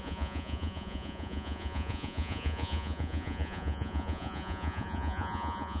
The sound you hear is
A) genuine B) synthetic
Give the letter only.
B